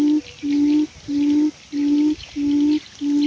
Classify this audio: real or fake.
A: real